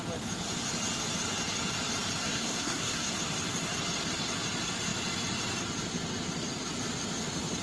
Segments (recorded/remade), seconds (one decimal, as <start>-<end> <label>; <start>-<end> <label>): 0.0-2.2 recorded; 2.2-3.1 remade; 3.1-7.6 recorded